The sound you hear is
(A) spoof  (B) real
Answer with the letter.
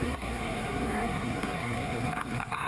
A